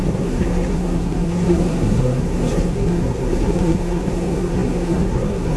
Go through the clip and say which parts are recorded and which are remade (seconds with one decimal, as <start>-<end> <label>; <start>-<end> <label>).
0.0-5.6 remade